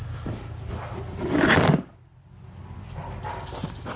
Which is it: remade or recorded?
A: recorded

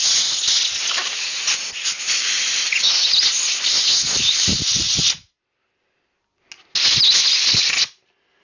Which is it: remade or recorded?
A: recorded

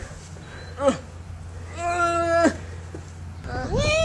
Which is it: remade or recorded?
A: recorded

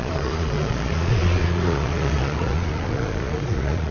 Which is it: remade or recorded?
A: remade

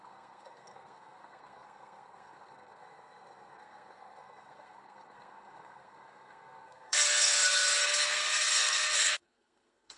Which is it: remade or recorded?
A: remade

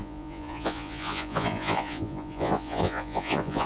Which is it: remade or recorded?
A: remade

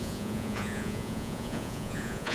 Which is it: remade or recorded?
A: remade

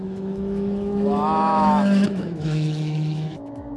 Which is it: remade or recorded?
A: remade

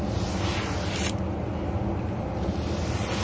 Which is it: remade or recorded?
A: recorded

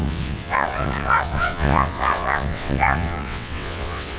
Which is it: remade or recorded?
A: remade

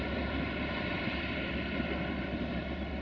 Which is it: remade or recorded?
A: recorded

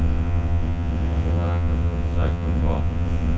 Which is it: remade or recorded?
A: remade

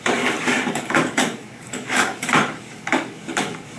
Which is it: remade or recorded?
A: remade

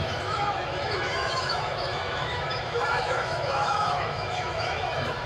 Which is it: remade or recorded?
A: remade